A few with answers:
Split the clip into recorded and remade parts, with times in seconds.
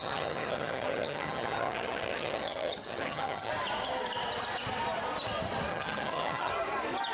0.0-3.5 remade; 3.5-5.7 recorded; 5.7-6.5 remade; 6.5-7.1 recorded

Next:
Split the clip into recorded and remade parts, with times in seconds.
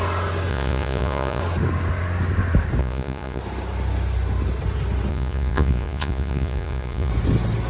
0.0-0.5 recorded; 0.5-1.4 remade; 1.4-2.8 recorded; 2.8-3.4 remade; 3.4-5.1 recorded; 5.1-7.1 remade; 7.1-7.7 recorded